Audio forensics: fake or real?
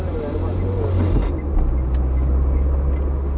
real